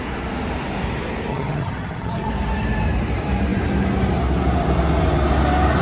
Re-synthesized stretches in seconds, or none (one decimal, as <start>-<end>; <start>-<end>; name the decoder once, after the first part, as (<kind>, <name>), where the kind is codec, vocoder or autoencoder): 1.3-2.3 (vocoder, HiFi-GAN)